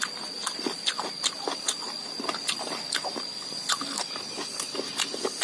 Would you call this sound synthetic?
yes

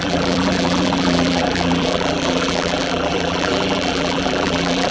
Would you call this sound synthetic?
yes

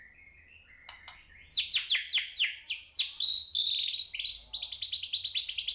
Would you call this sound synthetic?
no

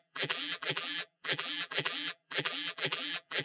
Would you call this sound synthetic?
yes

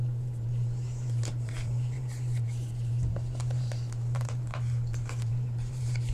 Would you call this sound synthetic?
yes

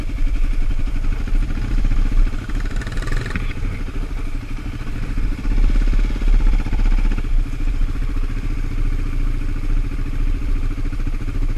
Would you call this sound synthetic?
yes